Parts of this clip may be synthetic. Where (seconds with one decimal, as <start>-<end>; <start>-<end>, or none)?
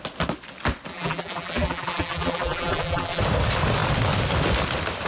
0.9-3.2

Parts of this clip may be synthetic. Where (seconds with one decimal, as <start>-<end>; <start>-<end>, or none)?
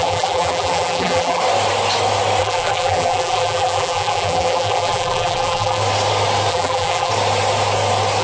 0.0-1.4; 2.4-5.8; 6.5-7.1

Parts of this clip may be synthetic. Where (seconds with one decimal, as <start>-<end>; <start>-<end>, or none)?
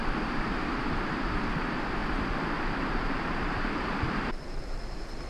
0.0-2.0; 2.9-5.3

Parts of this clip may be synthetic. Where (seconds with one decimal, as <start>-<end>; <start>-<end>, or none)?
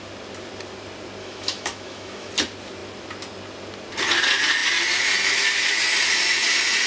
1.2-2.3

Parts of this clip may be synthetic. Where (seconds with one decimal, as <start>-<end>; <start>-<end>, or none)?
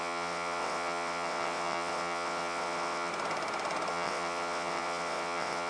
0.0-3.1; 3.9-5.7